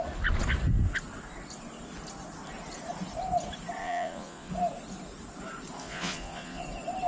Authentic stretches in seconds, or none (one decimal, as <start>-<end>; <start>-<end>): 0.0-3.8; 4.5-5.8; 6.6-7.1